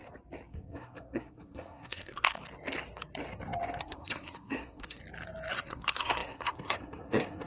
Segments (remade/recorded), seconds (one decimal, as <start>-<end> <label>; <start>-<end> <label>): 0.0-0.5 recorded; 0.5-2.4 remade; 2.4-3.8 recorded; 3.8-5.0 remade; 5.0-5.5 recorded; 5.5-7.5 remade